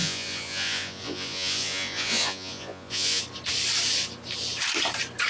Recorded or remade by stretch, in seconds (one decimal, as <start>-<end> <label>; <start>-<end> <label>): 0.0-3.2 remade; 3.2-5.3 recorded